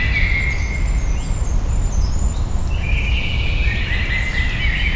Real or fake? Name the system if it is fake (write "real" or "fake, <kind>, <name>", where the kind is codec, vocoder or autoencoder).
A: real